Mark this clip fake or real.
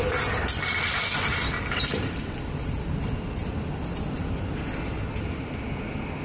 real